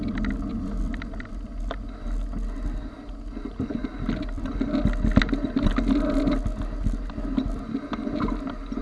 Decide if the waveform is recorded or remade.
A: recorded